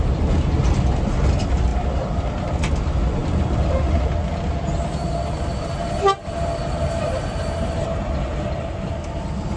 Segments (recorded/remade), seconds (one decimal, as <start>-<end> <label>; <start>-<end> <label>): 0.0-9.6 recorded